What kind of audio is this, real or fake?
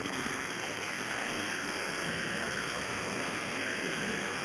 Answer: fake